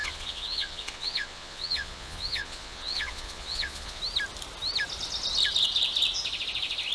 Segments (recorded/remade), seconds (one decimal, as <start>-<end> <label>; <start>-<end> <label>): 0.0-4.0 remade; 4.0-6.9 recorded